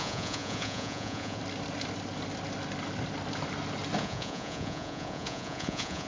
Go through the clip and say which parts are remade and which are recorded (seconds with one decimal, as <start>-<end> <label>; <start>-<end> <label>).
0.0-1.4 remade; 1.4-4.0 recorded; 4.0-6.1 remade